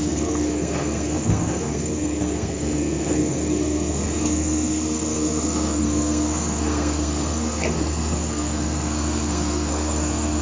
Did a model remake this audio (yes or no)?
yes